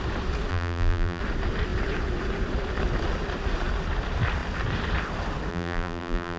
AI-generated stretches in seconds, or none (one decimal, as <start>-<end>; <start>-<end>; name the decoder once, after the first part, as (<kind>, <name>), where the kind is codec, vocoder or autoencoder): 0.5-1.2 (vocoder, BigVGAN v2); 5.5-6.4